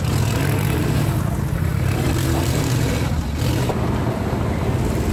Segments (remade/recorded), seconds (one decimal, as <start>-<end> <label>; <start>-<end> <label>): 0.0-5.1 recorded